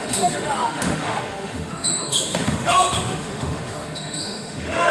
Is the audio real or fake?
fake